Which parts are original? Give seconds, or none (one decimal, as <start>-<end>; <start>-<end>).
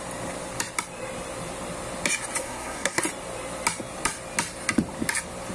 0.0-2.4; 3.0-5.5